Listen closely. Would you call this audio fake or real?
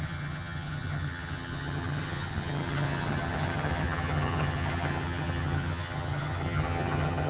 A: fake